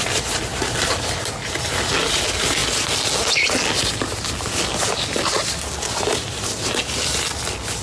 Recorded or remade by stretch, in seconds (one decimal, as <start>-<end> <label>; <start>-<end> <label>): 0.0-7.8 recorded